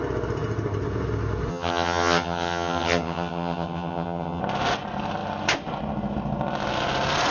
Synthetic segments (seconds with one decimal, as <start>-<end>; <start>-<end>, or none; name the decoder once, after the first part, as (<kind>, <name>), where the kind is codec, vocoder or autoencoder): 1.5-4.4 (vocoder, HiFi-GAN)